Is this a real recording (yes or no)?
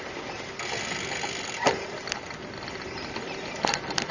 yes